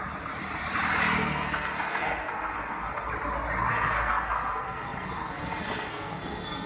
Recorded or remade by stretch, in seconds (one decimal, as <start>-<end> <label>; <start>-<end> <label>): 0.0-1.2 recorded; 1.2-3.1 remade; 3.1-3.7 recorded; 3.7-6.7 remade